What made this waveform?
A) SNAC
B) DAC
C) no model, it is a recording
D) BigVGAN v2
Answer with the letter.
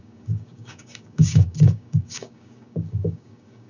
B